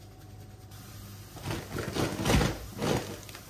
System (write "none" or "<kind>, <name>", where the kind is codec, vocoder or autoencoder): none